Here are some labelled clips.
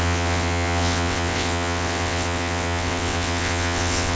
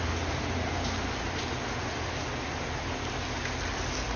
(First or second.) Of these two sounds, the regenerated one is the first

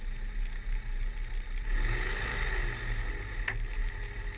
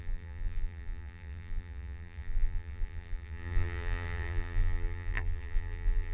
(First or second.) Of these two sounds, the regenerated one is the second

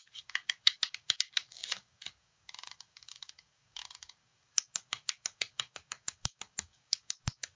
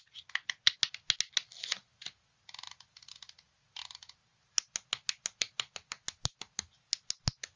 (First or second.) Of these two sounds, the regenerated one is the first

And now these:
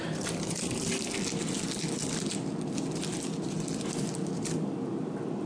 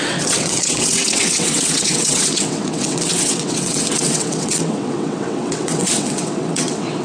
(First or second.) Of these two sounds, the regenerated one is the second